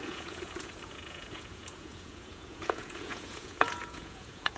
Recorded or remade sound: remade